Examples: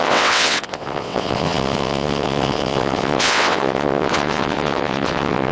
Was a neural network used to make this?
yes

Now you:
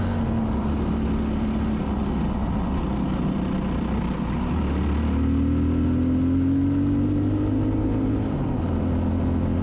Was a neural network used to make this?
no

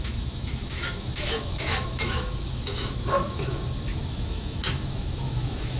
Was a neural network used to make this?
yes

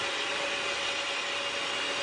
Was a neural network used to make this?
no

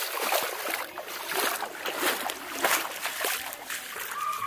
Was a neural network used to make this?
no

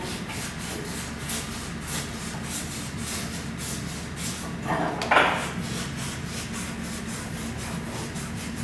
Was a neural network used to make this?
no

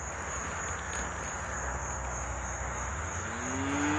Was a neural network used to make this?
no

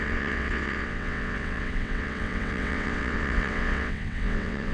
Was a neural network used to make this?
yes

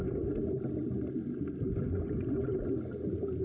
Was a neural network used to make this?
no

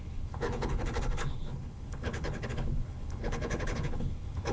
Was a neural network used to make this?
yes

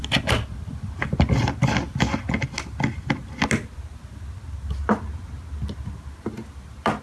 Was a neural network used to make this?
no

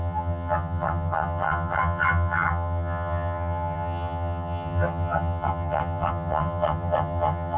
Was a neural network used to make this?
yes